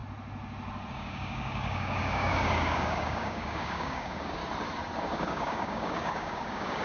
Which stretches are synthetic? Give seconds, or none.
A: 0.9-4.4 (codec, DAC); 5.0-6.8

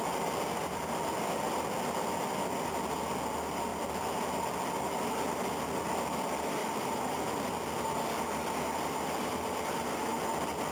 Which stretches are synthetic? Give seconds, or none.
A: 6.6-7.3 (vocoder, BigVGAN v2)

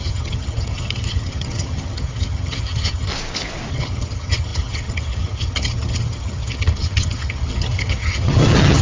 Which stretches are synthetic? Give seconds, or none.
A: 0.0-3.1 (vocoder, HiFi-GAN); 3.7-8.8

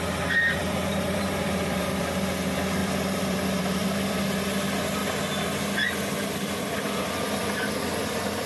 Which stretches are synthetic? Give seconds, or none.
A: 0.6-2.0 (vocoder, BigVGAN v2); 2.8-4.2

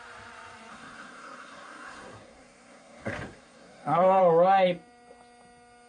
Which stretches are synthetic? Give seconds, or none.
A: 0.7-4.2 (codec, SNAC)

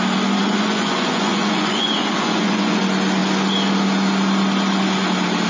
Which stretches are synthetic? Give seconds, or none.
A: 0.4-2.8 (vocoder, Vocos)